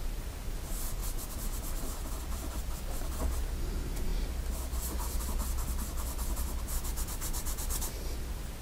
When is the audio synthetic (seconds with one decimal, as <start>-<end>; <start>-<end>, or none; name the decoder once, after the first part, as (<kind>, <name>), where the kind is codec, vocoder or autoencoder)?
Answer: 1.0-2.2 (vocoder, BigVGAN v2)